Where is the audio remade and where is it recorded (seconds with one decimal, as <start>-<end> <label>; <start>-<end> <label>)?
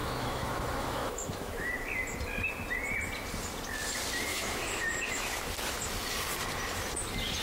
0.0-1.7 remade; 1.7-4.3 recorded; 4.3-5.4 remade; 5.4-7.4 recorded